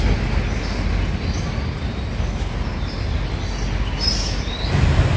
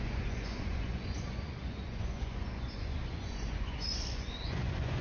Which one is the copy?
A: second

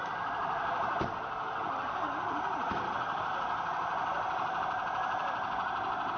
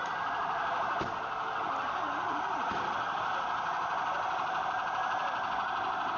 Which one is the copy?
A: first